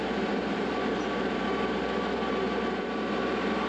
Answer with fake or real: fake